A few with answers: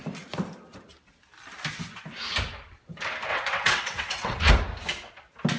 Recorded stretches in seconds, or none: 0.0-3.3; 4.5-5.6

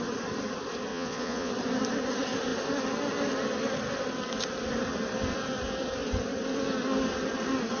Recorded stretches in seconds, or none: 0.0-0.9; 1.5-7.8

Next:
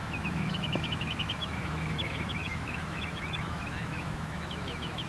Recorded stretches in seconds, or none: none

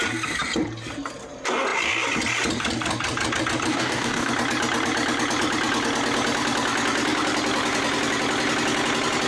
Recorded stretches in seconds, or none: 0.0-3.7; 4.3-9.3

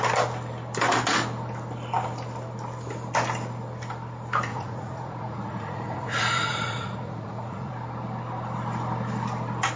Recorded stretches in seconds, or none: 0.0-4.5; 7.7-9.8

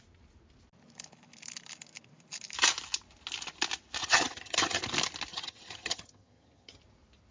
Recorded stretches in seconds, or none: 0.0-4.0; 4.8-5.3; 6.8-7.3